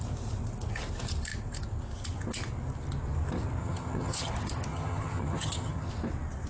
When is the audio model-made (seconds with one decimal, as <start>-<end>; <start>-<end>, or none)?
3.6-4.3; 4.7-5.9

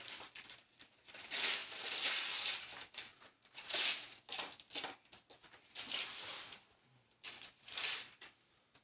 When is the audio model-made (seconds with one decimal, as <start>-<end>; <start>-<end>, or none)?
3.1-4.2